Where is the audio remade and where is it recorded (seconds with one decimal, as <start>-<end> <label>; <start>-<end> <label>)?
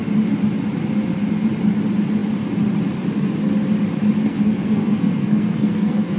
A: 0.0-4.3 recorded; 4.3-6.2 remade